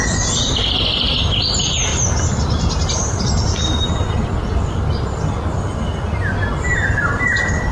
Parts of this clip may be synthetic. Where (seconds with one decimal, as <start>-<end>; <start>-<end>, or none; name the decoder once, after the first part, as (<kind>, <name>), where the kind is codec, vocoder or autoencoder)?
1.9-3.2 (vocoder, BigVGAN v2)